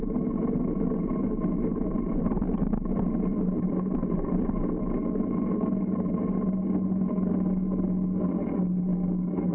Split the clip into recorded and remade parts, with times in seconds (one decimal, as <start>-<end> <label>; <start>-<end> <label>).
0.0-1.7 recorded; 1.7-2.2 remade; 2.2-9.5 recorded